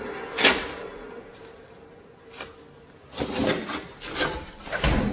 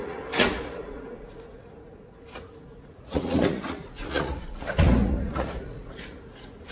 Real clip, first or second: first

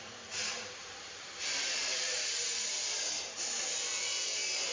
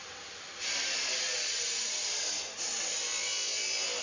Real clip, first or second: second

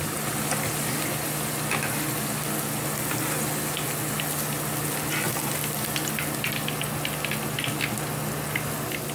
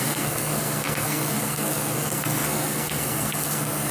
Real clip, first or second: first